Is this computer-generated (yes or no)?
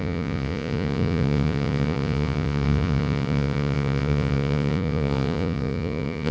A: yes